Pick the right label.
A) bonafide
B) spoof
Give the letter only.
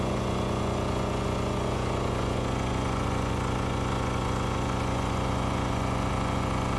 B